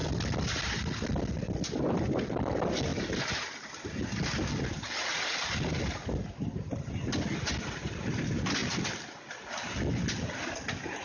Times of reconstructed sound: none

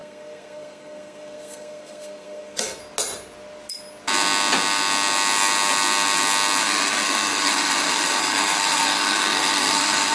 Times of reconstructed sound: 0.0-2.8; 6.6-10.1

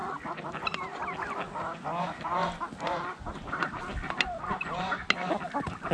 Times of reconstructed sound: none

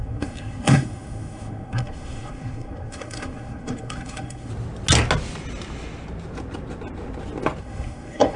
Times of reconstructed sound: 0.0-4.5; 7.6-8.4

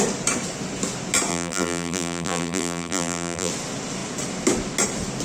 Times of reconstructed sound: 1.3-3.5

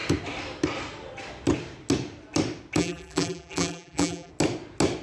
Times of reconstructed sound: 2.8-4.3

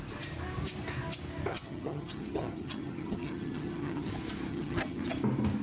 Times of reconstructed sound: 1.5-4.1; 4.5-5.1